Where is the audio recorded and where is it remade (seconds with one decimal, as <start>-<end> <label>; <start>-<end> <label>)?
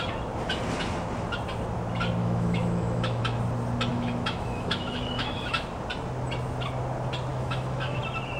0.0-2.2 recorded; 2.2-3.4 remade; 3.4-3.9 recorded; 3.9-5.6 remade; 5.6-7.3 recorded; 7.3-8.0 remade; 8.0-8.4 recorded